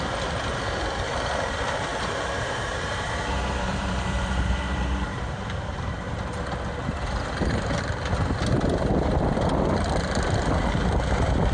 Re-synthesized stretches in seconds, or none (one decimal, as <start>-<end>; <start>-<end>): 1.9-6.1